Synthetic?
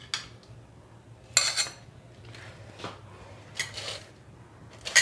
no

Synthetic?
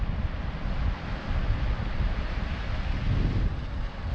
no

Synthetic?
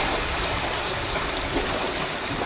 no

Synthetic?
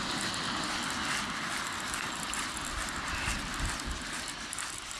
no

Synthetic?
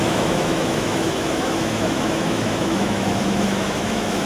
yes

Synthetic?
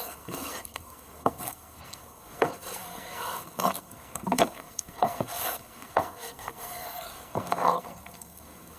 yes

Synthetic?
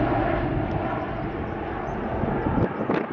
no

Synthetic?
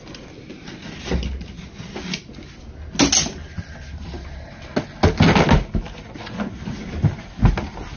no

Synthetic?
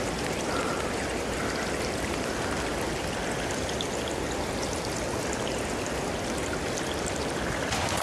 no